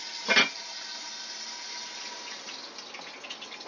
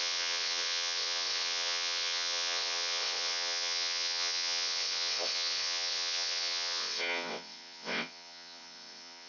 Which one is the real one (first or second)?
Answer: first